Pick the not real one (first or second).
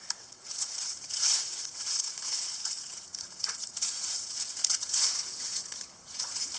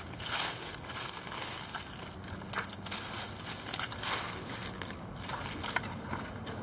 first